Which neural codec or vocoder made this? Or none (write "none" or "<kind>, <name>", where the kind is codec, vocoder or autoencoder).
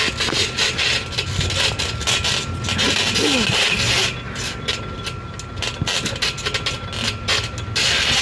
none